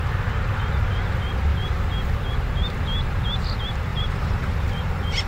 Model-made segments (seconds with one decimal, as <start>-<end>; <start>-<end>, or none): 3.9-5.3